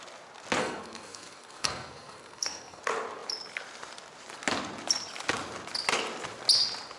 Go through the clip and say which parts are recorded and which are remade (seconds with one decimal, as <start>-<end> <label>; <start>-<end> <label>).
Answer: 0.0-0.6 recorded; 0.6-2.8 remade; 2.8-7.0 recorded